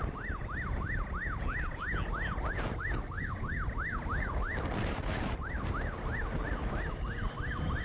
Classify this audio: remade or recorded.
recorded